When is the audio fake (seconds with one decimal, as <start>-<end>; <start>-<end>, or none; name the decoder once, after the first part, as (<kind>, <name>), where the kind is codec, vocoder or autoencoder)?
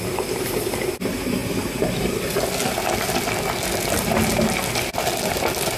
none